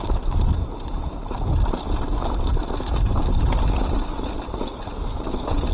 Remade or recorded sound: recorded